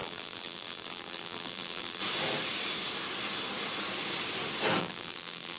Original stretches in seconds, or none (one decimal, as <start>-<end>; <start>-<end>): 2.0-4.8